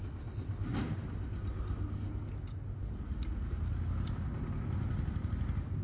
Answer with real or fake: real